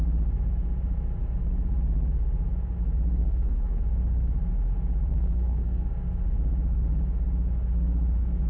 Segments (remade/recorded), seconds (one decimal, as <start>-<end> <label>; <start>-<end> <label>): 0.0-3.2 recorded; 3.2-3.8 remade; 3.8-5.1 recorded; 5.1-5.9 remade; 5.9-8.5 recorded